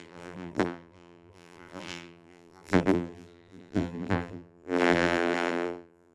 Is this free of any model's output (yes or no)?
no